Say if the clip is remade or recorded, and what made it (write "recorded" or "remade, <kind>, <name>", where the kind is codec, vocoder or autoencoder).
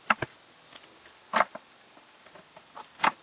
recorded